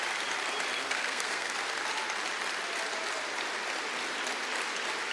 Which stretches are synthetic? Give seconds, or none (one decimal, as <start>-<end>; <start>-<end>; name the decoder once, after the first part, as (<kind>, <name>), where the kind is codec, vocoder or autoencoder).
0.8-1.5 (codec, SNAC)